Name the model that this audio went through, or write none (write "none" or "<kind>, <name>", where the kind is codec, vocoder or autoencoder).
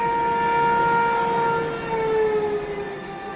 none